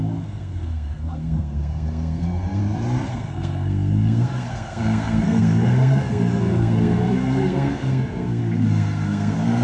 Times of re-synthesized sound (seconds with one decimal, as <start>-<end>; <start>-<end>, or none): 0.0-2.6; 3.1-9.6